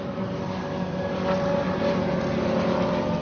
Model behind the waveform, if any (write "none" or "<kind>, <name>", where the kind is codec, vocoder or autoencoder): none